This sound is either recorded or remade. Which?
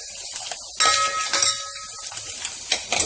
recorded